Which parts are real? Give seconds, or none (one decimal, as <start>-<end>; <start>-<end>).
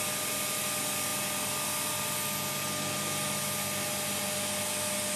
0.0-5.2